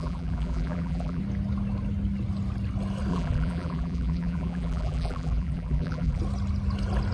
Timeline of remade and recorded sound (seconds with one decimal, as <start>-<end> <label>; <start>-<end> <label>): 0.0-1.2 remade; 1.2-3.1 recorded; 3.1-6.2 remade; 6.2-7.1 recorded